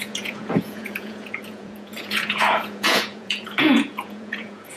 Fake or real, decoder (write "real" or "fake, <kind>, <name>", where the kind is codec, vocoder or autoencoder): fake, vocoder, Vocos